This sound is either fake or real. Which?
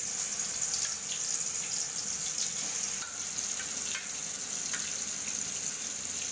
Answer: real